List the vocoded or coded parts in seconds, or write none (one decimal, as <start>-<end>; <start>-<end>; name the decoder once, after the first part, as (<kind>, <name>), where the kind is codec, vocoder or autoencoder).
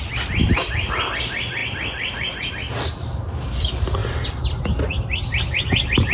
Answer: none